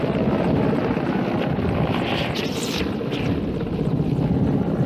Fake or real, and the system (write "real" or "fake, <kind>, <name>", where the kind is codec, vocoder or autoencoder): real